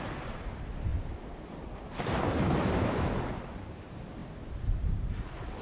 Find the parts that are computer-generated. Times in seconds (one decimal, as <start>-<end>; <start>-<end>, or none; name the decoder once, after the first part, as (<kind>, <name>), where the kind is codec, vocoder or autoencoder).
0.0-0.9 (vocoder, BigVGAN v2); 3.6-5.6